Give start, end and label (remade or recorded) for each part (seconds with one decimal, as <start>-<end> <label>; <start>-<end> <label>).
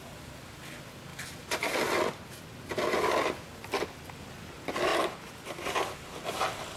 0.0-6.8 recorded